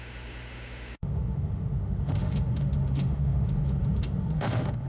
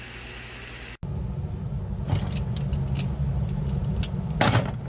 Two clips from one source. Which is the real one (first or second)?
second